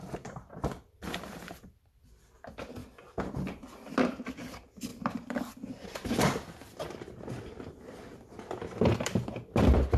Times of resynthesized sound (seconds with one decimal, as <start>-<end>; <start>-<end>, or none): 0.0-6.7; 7.7-10.0

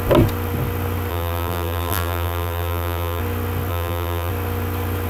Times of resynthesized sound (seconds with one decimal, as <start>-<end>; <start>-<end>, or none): 1.1-3.2; 3.7-4.3

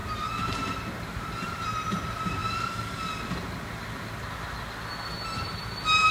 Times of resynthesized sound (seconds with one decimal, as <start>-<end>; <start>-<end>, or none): 0.9-2.4

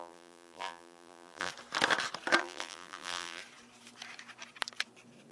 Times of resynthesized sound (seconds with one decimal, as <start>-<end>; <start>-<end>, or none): 0.0-1.5; 2.4-3.4

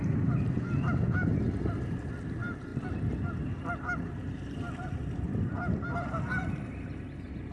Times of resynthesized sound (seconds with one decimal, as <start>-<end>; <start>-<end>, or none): none

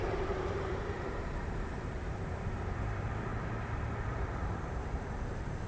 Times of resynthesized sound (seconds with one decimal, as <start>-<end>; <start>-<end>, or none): 0.0-3.3; 4.2-5.7

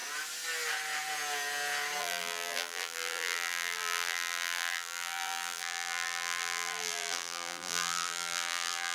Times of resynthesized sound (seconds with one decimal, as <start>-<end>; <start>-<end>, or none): 2.0-8.9

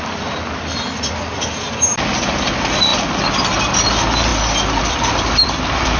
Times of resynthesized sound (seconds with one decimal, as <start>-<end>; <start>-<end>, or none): 0.0-2.9; 3.7-4.3; 4.8-6.0